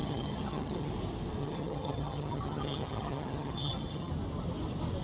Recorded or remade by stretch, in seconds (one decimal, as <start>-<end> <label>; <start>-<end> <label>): 0.0-0.9 remade; 0.9-1.4 recorded; 1.4-4.1 remade; 4.1-5.0 recorded